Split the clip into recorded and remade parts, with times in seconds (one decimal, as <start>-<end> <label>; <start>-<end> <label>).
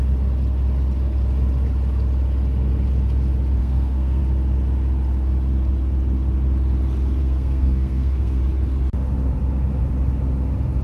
0.0-3.6 recorded; 3.6-4.2 remade; 4.2-7.2 recorded; 7.2-8.4 remade; 8.4-10.8 recorded